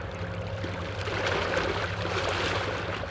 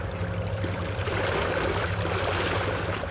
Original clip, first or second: first